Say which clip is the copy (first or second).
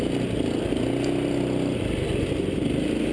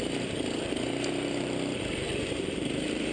second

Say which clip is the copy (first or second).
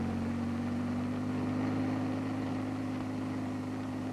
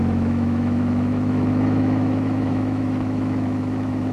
second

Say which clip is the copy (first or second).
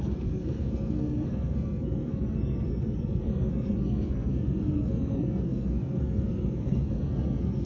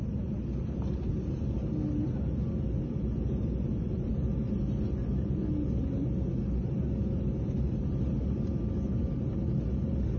first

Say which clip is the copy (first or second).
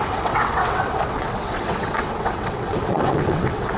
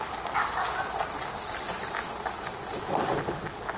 first